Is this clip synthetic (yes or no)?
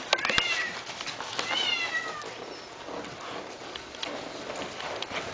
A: no